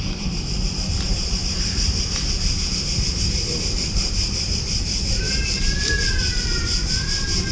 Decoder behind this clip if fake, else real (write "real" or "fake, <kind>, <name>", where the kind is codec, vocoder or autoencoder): fake, vocoder, BigVGAN v2